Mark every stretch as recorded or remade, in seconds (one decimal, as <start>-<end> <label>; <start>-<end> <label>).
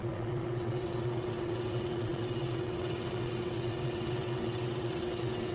0.0-5.5 remade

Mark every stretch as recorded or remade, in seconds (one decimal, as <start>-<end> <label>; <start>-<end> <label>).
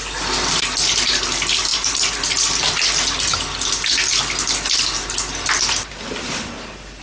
0.0-7.0 recorded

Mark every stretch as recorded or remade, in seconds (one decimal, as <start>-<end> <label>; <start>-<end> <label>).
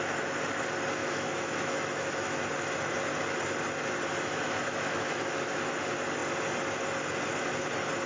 0.0-1.0 recorded; 1.0-2.4 remade; 2.4-4.1 recorded; 4.1-5.8 remade; 5.8-8.1 recorded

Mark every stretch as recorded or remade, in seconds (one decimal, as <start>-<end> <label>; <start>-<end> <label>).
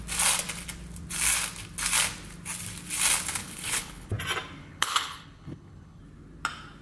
0.0-3.4 recorded; 3.4-4.1 remade; 4.1-4.6 recorded; 4.6-6.0 remade; 6.0-6.8 recorded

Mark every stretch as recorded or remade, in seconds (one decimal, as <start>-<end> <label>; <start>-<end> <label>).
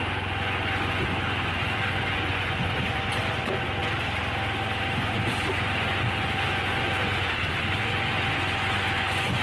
0.0-3.8 remade; 3.8-4.8 recorded; 4.8-9.4 remade